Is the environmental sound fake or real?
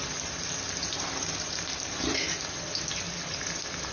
real